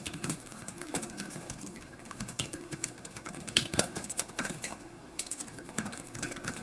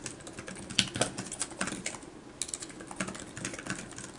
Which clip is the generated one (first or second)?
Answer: first